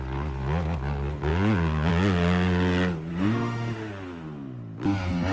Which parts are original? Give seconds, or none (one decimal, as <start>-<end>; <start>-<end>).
0.0-3.1; 3.9-5.3